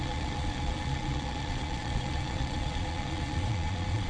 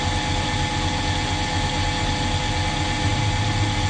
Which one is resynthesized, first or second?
first